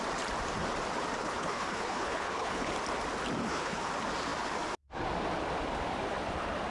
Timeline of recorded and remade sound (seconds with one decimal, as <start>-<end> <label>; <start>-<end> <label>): 0.0-1.2 recorded; 1.2-2.7 remade; 2.7-3.4 recorded; 3.4-3.9 remade; 3.9-6.7 recorded